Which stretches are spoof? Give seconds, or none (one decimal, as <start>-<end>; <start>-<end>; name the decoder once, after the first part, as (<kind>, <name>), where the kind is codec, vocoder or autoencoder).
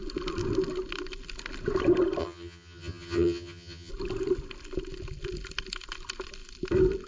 2.2-3.9 (vocoder, HiFi-GAN)